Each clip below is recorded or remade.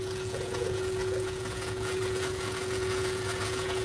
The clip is remade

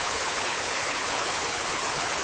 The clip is remade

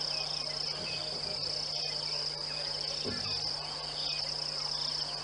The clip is recorded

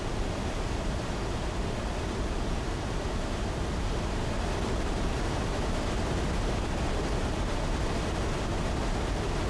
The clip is recorded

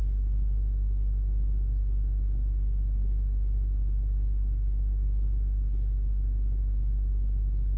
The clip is recorded